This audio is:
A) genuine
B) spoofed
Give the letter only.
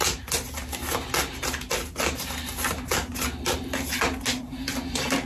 A